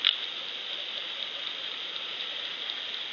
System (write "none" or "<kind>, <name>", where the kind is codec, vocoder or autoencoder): none